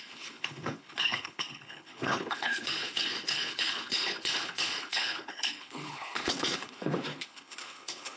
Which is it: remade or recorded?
remade